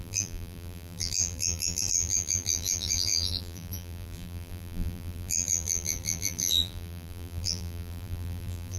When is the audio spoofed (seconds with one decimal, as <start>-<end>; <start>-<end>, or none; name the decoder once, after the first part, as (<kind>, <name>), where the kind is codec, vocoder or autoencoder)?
0.0-8.8 (vocoder, BigVGAN v2)